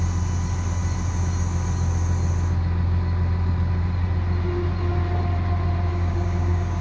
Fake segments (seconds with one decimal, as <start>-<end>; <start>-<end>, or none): 5.9-6.8